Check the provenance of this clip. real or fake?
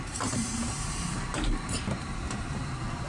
fake